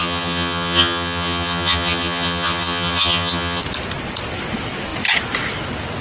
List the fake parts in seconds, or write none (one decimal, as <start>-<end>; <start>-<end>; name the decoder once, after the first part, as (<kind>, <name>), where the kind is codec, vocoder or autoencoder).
0.0-3.6 (vocoder, HiFi-GAN)